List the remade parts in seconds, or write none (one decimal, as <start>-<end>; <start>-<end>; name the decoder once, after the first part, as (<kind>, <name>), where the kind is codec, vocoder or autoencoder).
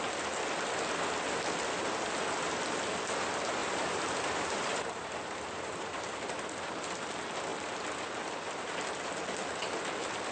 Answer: 3.6-6.0 (vocoder, BigVGAN v2)